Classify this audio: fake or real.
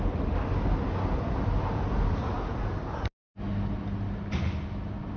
real